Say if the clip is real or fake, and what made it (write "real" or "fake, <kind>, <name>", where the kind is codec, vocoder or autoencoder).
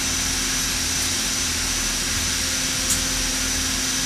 real